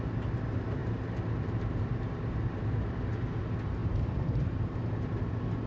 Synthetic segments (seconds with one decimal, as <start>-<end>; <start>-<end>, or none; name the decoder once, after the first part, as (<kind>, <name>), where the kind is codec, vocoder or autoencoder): 0.8-3.4 (vocoder, BigVGAN v2); 3.8-4.9